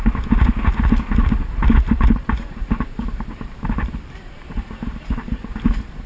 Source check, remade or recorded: remade